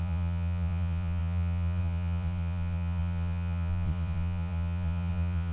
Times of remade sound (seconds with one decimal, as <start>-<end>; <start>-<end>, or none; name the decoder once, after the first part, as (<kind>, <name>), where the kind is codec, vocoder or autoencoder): 0.0-5.5 (vocoder, Vocos)